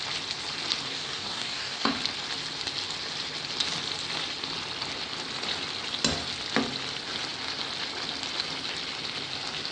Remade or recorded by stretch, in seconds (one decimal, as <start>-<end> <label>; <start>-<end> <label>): 0.0-0.9 recorded; 0.9-1.9 remade; 1.9-9.7 recorded